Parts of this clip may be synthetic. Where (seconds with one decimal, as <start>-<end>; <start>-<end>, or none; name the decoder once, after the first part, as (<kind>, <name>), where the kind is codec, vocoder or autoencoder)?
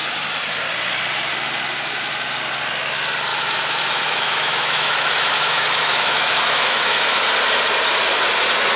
3.3-7.2 (autoencoder, DAC-VAE)